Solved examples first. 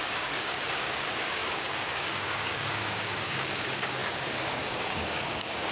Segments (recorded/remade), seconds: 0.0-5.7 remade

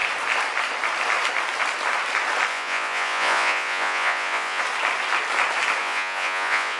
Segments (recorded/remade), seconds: 0.0-2.5 recorded; 2.5-4.6 remade; 4.6-5.8 recorded; 5.8-6.8 remade

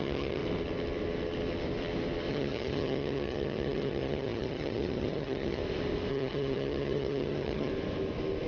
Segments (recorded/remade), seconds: 0.0-0.4 remade; 0.4-2.3 recorded; 2.3-5.6 remade; 5.6-6.1 recorded; 6.1-7.7 remade; 7.7-8.5 recorded

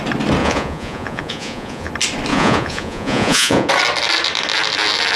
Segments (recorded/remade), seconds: 0.0-0.4 recorded; 0.4-1.9 remade; 1.9-2.3 recorded; 2.3-3.7 remade; 3.7-5.2 recorded

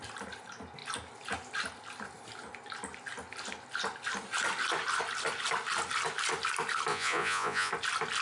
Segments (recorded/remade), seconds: 0.0-6.9 recorded; 6.9-7.7 remade; 7.7-8.2 recorded

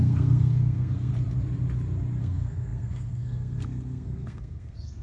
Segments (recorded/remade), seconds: 0.0-1.1 remade; 1.1-2.2 recorded; 2.2-5.0 remade